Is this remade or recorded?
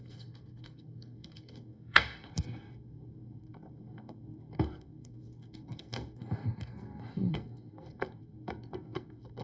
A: remade